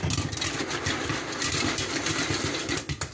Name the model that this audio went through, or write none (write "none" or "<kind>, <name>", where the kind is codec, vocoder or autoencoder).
none